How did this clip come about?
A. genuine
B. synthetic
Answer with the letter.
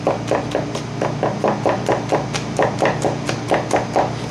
A